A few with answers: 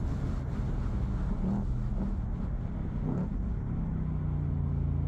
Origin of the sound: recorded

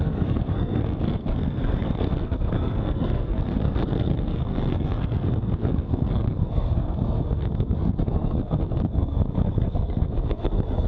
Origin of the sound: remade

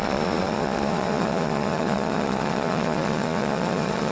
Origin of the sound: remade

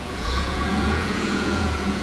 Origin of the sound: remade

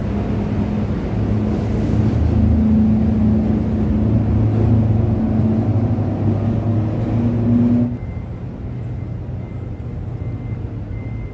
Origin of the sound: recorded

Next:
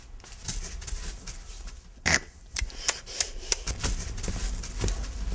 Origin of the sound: recorded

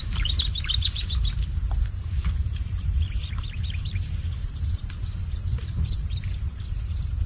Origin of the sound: remade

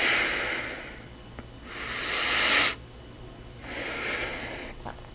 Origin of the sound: recorded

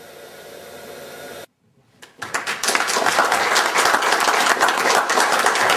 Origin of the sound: recorded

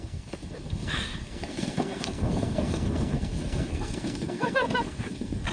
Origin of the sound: remade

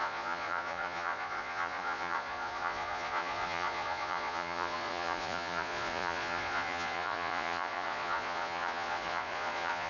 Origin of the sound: remade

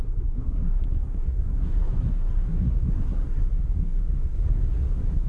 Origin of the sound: remade